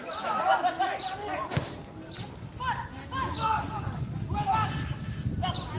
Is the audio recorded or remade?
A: recorded